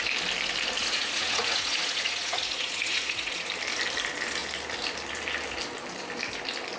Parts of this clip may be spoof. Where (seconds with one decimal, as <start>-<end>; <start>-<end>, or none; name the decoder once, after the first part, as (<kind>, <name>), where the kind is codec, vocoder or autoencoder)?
0.8-3.5 (vocoder, Vocos)